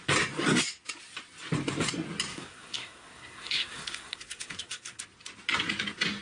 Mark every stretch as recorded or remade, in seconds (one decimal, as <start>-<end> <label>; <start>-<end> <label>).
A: 0.0-2.3 recorded; 2.3-5.0 remade; 5.0-6.2 recorded